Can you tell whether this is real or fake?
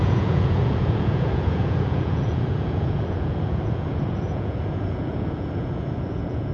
fake